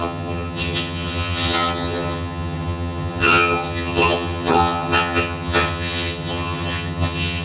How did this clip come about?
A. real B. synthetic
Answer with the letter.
B